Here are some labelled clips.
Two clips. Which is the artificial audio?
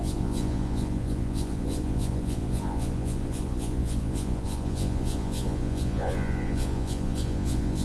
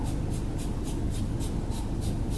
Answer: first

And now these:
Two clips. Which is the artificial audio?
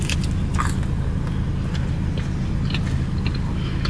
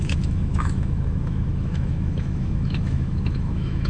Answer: second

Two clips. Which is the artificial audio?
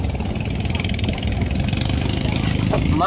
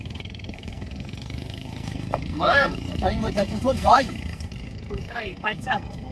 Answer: second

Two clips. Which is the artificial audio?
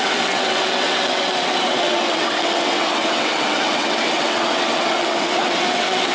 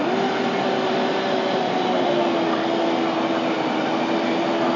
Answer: first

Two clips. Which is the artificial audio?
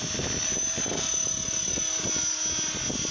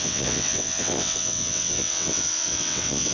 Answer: second